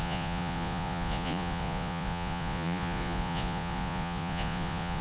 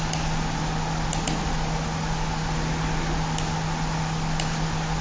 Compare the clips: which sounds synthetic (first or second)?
first